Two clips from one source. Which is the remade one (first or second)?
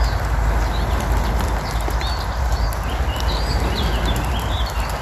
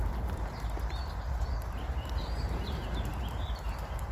second